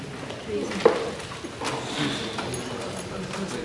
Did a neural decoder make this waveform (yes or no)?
no